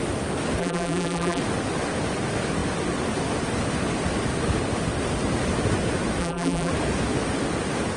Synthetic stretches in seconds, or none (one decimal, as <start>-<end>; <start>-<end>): 0.6-1.4; 6.2-6.7